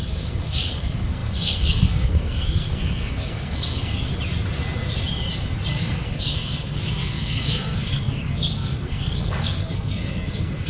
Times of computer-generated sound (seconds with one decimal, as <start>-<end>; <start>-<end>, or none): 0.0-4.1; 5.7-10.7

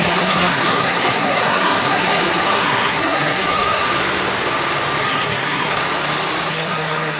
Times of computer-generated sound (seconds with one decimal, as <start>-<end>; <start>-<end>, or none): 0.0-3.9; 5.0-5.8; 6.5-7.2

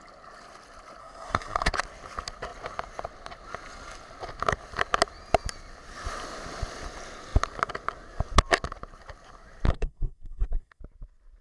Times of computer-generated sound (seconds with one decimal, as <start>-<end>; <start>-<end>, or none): 1.0-1.7; 9.7-10.8